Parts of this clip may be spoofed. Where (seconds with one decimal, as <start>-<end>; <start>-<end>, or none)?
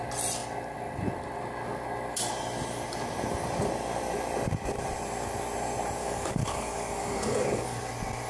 6.0-7.9